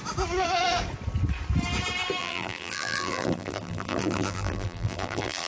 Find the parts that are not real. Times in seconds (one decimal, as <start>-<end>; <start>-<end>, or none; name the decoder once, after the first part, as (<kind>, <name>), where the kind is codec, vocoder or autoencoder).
2.2-5.5 (vocoder, BigVGAN v2)